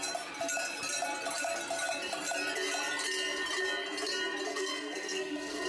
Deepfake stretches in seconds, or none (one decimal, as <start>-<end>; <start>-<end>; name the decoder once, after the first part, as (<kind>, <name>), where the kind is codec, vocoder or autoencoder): 4.5-5.7 (codec, SNAC)